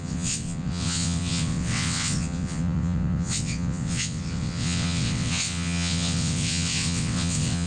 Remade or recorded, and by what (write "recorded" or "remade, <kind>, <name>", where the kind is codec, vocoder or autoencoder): remade, vocoder, WaveNeXt